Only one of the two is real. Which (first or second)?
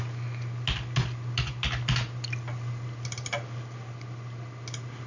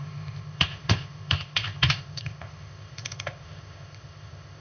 first